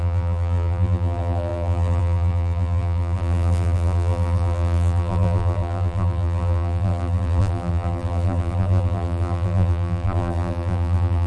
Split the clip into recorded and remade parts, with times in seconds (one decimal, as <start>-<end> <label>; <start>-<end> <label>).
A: 0.0-11.3 remade

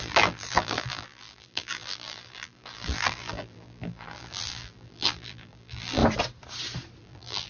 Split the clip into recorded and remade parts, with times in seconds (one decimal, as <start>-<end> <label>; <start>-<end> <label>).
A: 0.0-6.0 remade; 6.0-7.0 recorded; 7.0-7.5 remade

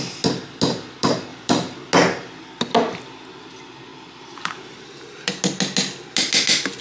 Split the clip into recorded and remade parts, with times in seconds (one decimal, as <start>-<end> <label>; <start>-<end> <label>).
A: 0.0-1.3 recorded; 1.3-1.9 remade; 1.9-3.9 recorded; 3.9-5.2 remade; 5.2-6.8 recorded